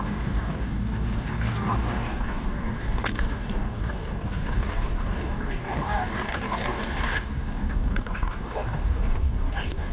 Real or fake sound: fake